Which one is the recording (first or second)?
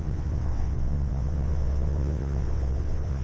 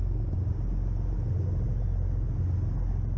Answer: second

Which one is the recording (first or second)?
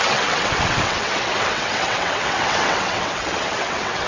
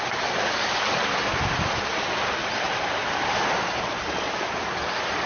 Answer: second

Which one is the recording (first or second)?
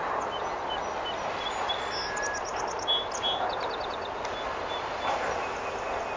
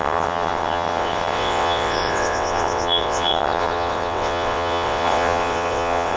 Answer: first